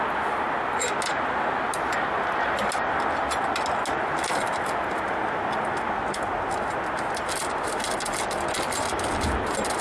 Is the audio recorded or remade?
recorded